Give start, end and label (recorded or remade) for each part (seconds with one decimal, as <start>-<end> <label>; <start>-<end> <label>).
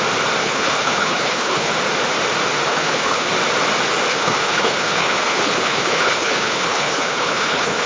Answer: 0.0-0.4 recorded; 0.4-1.7 remade; 1.7-2.7 recorded; 2.7-3.3 remade; 3.3-4.1 recorded; 4.1-7.9 remade